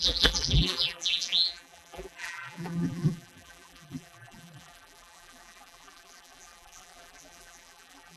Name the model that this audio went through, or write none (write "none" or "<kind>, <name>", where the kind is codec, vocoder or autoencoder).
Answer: vocoder, BigVGAN v2